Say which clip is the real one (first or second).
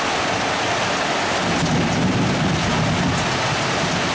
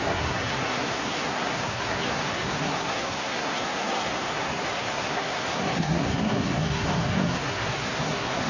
first